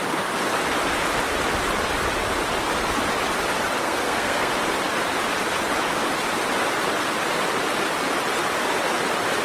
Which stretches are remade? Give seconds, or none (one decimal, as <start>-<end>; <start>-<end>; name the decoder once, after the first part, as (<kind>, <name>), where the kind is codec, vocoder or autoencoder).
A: 3.8-4.5 (codec, SNAC)